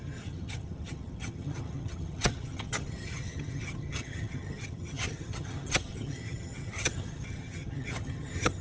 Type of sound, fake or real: fake